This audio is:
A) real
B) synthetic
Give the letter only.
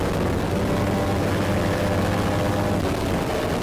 A